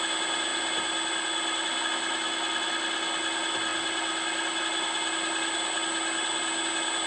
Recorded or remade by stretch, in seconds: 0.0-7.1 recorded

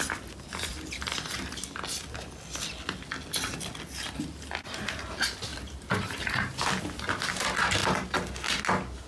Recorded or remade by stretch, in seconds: 0.0-5.5 recorded; 5.5-7.1 remade; 7.1-7.8 recorded; 7.8-8.6 remade; 8.6-9.1 recorded

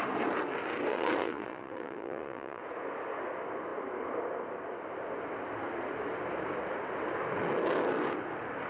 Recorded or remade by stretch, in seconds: 0.0-0.9 recorded; 0.9-2.6 remade; 2.6-8.7 recorded

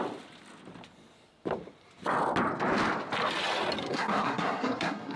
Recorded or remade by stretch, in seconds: 0.0-3.8 recorded; 3.8-5.2 remade

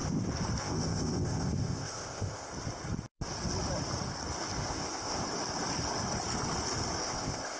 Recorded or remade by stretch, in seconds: 0.0-0.6 recorded; 0.6-2.5 remade; 2.5-4.7 recorded; 4.7-5.2 remade; 5.2-7.0 recorded; 7.0-7.6 remade

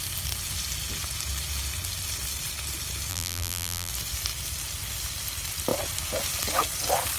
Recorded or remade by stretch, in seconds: 0.0-3.1 recorded; 3.1-3.9 remade; 3.9-7.2 recorded